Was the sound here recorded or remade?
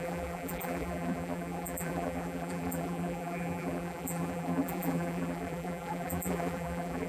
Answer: remade